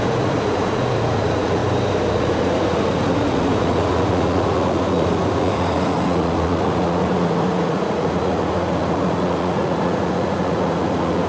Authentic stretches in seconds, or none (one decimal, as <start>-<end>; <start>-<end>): 1.6-2.1